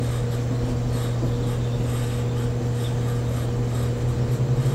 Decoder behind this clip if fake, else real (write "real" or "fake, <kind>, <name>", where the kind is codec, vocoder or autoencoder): real